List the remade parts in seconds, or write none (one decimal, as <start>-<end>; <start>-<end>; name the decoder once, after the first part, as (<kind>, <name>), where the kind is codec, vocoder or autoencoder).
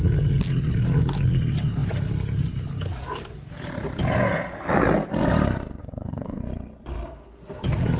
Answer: 5.8-6.4 (codec, SNAC)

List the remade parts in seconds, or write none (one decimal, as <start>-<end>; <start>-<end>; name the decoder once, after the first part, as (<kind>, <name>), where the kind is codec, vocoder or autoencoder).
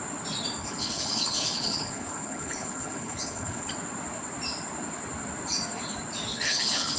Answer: 0.6-3.7 (codec, HILCodec); 6.3-7.0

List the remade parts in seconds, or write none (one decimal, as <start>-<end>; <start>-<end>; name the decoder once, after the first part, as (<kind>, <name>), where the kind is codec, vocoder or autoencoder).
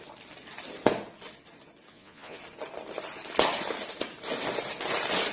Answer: 1.9-2.4 (vocoder, Vocos)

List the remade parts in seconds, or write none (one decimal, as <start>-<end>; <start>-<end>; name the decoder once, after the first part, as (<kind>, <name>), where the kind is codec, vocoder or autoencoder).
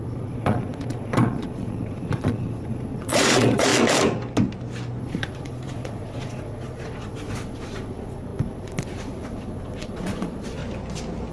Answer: 0.0-3.7 (vocoder, Vocos); 5.0-10.6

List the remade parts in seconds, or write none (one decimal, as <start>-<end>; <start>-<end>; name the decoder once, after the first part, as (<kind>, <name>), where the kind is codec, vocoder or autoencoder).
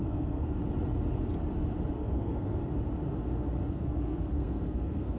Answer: 0.0-0.6 (codec, SNAC); 1.9-2.6; 3.7-5.2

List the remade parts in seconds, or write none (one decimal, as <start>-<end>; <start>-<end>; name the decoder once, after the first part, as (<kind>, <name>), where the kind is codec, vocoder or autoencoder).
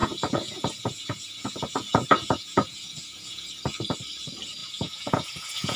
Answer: 0.0-3.5 (vocoder, Vocos); 4.6-5.8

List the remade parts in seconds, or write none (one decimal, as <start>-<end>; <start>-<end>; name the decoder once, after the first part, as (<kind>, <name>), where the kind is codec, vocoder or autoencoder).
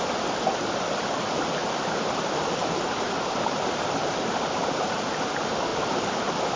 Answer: 1.6-2.3 (vocoder, BigVGAN v2); 4.0-5.1; 5.7-6.6